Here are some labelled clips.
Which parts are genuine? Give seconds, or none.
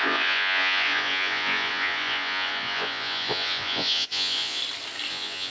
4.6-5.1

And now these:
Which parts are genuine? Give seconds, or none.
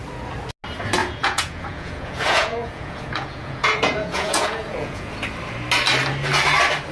0.0-1.0; 5.1-6.9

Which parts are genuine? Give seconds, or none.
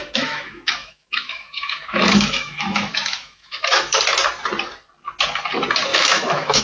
4.0-5.9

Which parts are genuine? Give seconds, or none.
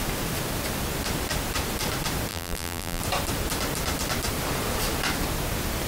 0.0-2.3; 3.0-5.9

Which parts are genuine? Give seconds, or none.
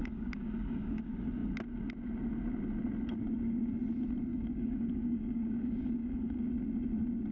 1.0-4.3; 6.5-7.3